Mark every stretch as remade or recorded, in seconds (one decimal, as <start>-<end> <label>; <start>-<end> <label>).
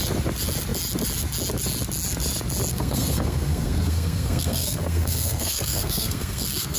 0.0-2.7 recorded; 2.7-6.8 remade